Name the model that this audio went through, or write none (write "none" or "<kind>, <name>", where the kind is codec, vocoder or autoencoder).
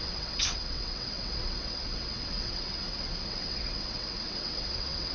vocoder, WaveNeXt